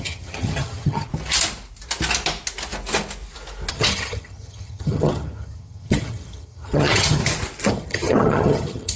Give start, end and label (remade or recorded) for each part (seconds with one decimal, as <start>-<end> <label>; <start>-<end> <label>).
0.0-1.1 remade; 1.1-3.7 recorded; 3.7-7.2 remade; 7.2-7.7 recorded; 7.7-9.0 remade